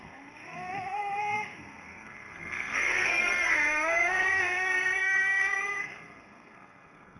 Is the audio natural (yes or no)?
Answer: no